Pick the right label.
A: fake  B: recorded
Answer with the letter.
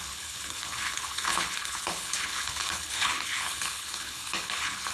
A